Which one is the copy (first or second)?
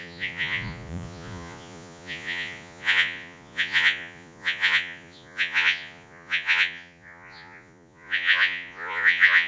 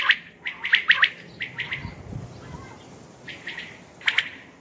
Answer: first